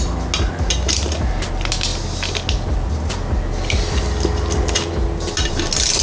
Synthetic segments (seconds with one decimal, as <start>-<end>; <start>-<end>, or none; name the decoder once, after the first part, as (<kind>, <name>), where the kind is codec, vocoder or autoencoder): none